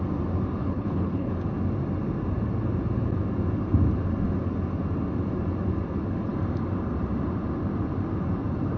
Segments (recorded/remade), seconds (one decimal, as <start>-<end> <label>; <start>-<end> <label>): 0.0-0.6 recorded; 0.6-1.3 remade; 1.3-8.8 recorded